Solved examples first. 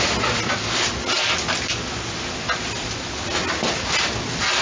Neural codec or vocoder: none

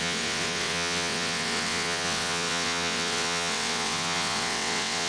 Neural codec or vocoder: vocoder, WaveNeXt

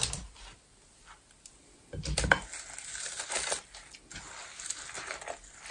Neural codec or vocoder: none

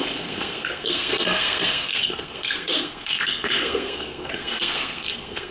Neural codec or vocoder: codec, SNAC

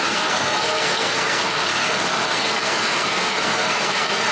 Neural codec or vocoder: codec, SNAC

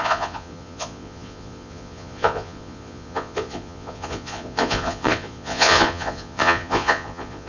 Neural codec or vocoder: vocoder, Vocos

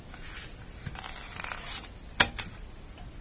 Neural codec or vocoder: none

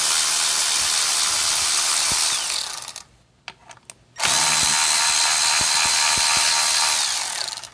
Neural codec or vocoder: none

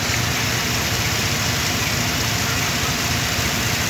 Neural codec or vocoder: vocoder, BigVGAN v2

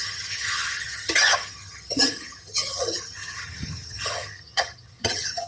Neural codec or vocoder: vocoder, HiFi-GAN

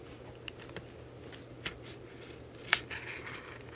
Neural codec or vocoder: none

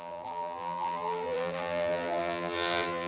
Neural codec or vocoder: vocoder, BigVGAN v2